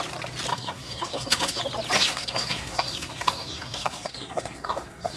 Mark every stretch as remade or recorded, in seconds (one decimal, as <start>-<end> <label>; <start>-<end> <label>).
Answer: 0.0-0.5 recorded; 0.5-1.6 remade; 1.6-2.0 recorded; 2.0-5.2 remade